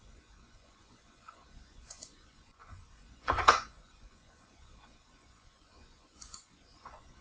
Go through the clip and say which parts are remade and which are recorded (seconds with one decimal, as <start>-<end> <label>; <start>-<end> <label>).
0.0-7.2 remade